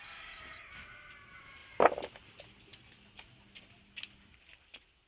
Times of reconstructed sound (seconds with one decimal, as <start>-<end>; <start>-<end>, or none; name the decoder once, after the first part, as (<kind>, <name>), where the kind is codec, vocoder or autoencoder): none

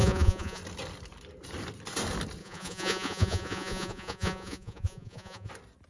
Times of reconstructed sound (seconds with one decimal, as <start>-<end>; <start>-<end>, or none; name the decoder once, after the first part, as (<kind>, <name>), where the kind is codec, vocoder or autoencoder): 0.0-0.6 (vocoder, Vocos); 2.4-5.5